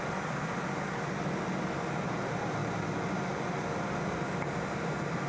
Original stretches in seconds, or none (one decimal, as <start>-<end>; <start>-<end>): 0.0-5.3